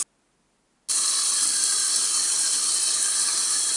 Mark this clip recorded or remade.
recorded